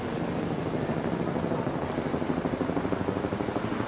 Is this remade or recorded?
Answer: recorded